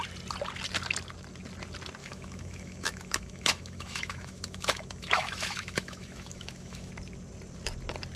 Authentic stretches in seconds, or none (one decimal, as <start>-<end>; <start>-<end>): 0.0-2.0; 6.9-8.2